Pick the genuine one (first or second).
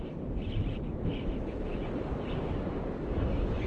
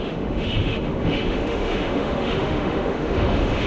first